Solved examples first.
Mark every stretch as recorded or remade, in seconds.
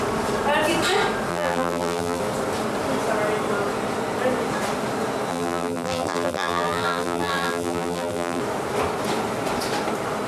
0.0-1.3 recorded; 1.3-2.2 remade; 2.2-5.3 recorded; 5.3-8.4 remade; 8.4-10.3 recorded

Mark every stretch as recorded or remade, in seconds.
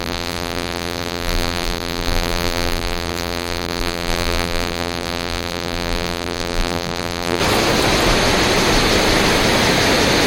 0.0-7.4 remade; 7.4-10.3 recorded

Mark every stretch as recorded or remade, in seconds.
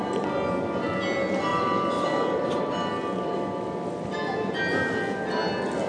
0.0-1.5 recorded; 1.5-2.7 remade; 2.7-5.9 recorded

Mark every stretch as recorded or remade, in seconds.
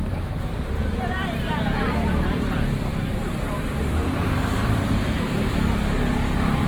0.0-6.7 remade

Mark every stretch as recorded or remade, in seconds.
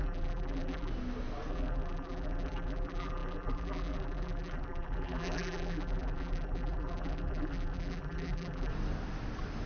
0.0-0.9 remade; 0.9-1.5 recorded; 1.5-8.7 remade; 8.7-9.7 recorded